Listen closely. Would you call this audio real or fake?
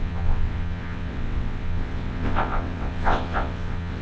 fake